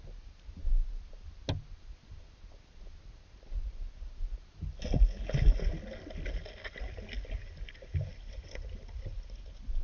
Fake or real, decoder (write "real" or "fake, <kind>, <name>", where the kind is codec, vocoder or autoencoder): real